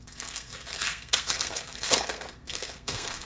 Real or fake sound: fake